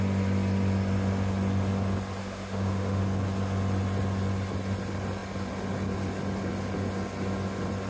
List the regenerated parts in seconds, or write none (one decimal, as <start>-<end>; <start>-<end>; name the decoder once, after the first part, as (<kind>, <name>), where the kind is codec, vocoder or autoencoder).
2.2-3.0 (autoencoder, DAC-VAE)